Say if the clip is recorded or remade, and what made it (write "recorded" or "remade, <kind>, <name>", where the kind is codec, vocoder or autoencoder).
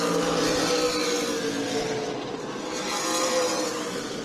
recorded